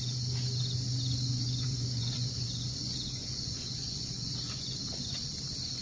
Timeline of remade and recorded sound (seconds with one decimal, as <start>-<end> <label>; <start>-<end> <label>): 0.0-1.3 recorded; 1.3-4.8 remade; 4.8-5.8 recorded